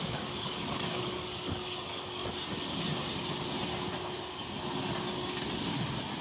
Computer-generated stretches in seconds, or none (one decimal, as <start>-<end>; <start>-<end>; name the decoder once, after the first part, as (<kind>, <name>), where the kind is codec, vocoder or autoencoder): 0.0-2.2 (codec, DAC)